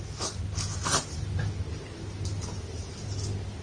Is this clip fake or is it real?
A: real